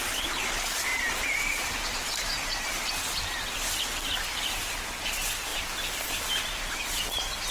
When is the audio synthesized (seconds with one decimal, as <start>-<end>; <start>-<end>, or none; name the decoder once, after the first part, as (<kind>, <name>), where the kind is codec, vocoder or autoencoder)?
0.9-2.3 (vocoder, BigVGAN v2); 5.5-7.0